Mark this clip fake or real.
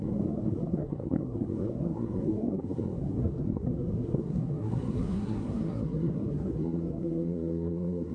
fake